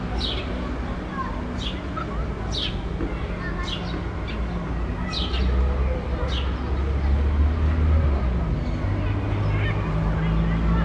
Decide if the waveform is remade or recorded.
recorded